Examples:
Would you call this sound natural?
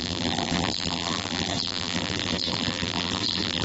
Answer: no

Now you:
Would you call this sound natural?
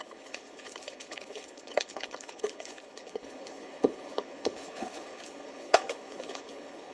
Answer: no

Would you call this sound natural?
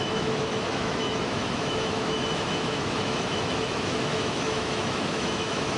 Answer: no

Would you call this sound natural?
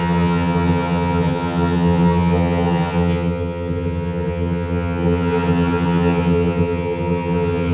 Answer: no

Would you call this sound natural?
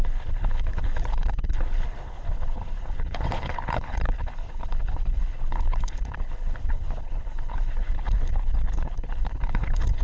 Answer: no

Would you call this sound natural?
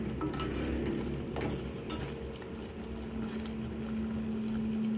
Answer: yes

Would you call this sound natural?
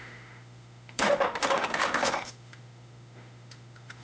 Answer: no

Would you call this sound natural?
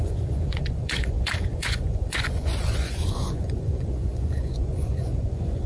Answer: no